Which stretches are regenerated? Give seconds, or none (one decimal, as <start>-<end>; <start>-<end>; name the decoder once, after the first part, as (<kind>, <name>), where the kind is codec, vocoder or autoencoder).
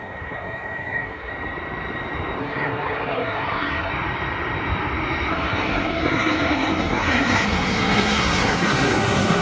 0.0-1.3 (codec, SNAC); 2.4-3.9; 5.3-9.4